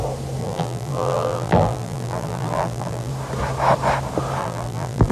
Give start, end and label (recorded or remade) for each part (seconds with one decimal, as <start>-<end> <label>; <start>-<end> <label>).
0.0-0.4 recorded; 0.4-3.1 remade; 3.1-4.4 recorded; 4.4-5.1 remade